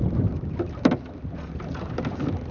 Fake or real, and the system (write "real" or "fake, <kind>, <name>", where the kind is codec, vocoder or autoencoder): real